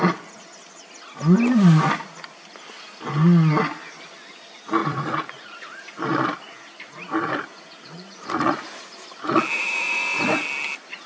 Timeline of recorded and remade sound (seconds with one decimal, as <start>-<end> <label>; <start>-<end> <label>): 0.0-4.8 recorded; 4.8-5.6 remade; 5.6-7.5 recorded; 7.5-8.5 remade; 8.5-11.1 recorded

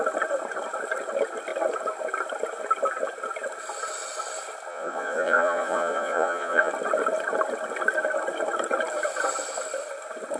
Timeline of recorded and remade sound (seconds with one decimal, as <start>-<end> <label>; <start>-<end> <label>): 0.0-4.7 recorded; 4.7-6.7 remade; 6.7-10.4 recorded

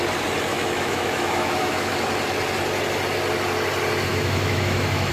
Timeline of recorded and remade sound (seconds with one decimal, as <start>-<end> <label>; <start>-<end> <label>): 0.0-0.5 recorded; 0.5-1.9 remade; 1.9-4.1 recorded; 4.1-5.1 remade

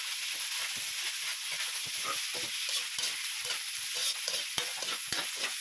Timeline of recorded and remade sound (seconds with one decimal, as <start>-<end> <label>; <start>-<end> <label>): 0.0-1.3 recorded; 1.3-2.1 remade; 2.1-4.0 recorded; 4.0-5.6 remade